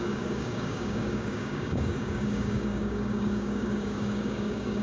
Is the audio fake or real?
fake